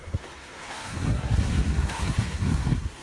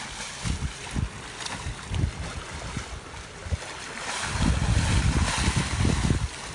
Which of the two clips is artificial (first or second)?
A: first